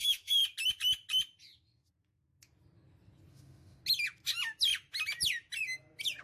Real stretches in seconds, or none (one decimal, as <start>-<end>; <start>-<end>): 0.4-3.3; 3.8-6.2